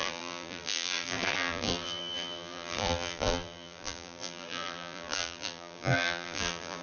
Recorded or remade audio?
remade